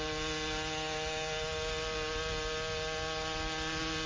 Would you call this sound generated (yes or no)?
no